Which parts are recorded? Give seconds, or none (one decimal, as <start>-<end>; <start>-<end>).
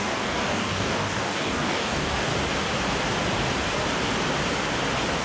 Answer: 2.3-5.2